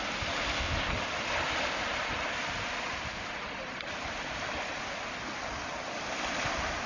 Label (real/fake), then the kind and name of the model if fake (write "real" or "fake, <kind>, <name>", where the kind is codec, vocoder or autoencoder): real